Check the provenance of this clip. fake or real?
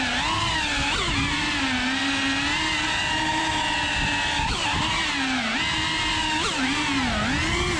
real